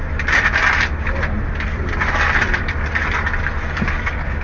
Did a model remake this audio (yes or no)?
yes